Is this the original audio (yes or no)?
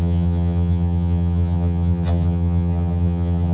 no